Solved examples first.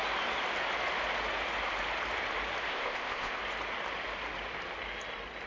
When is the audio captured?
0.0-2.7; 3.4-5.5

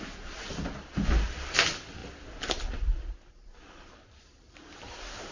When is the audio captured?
0.0-5.3

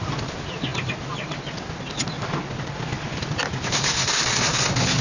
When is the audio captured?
0.0-5.0

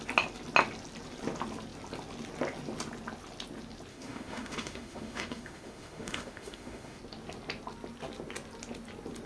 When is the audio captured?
0.0-3.9; 7.0-9.3

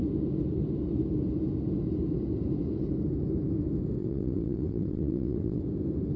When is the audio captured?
0.0-4.0; 5.6-6.2

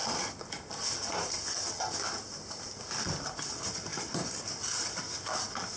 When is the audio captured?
0.0-5.8